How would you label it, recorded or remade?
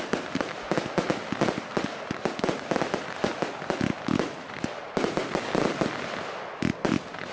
recorded